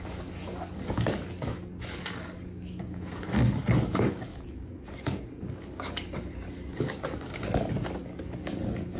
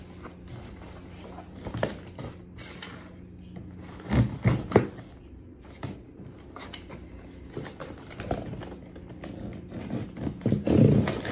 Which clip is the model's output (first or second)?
first